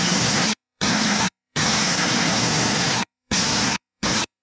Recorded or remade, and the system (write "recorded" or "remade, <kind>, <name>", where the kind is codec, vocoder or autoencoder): remade, codec, SNAC